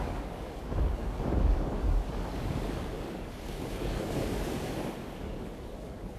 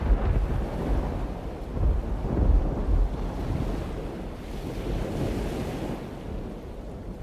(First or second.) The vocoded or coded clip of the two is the first